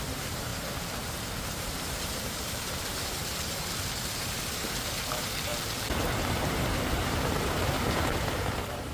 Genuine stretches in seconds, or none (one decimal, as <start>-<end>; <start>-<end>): 0.5-1.4; 5.5-6.3